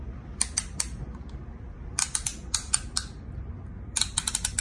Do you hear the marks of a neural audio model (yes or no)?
yes